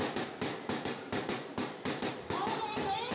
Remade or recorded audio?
recorded